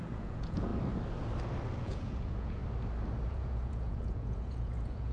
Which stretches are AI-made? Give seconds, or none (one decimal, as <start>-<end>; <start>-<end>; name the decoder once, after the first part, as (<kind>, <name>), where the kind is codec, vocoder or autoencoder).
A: 0.0-0.7 (vocoder, Vocos); 1.8-2.6; 3.3-5.1